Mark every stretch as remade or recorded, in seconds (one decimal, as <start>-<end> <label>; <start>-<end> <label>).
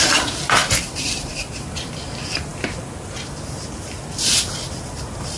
0.0-5.4 remade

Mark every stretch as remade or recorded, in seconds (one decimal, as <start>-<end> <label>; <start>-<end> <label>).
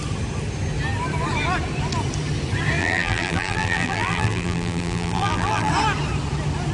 0.0-2.8 recorded; 2.8-5.7 remade; 5.7-6.7 recorded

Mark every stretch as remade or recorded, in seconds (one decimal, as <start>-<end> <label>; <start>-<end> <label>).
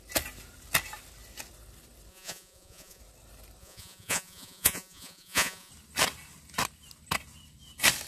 0.0-2.1 recorded; 2.1-3.0 remade; 3.0-3.6 recorded; 3.6-5.7 remade; 5.7-8.1 recorded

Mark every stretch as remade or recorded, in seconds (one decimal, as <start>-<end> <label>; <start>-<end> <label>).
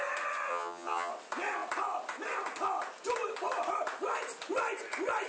0.0-0.5 recorded; 0.5-1.1 remade; 1.1-5.3 recorded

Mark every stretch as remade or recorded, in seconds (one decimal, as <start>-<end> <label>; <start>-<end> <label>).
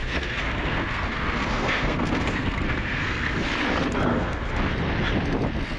0.0-3.5 remade; 3.5-4.1 recorded; 4.1-4.7 remade; 4.7-5.8 recorded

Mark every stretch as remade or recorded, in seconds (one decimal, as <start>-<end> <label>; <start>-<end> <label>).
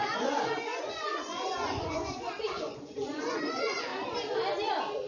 0.0-3.9 remade; 3.9-5.1 recorded